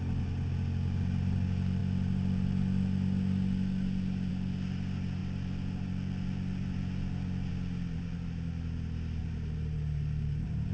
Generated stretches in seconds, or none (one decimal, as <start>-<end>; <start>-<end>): 9.2-10.7